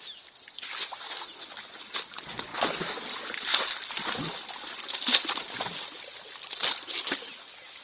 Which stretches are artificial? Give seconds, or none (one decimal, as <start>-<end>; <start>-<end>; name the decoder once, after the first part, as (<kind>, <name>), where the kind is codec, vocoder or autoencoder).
none